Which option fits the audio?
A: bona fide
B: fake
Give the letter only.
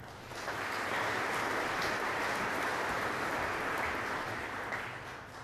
A